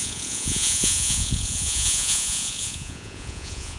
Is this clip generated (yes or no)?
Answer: yes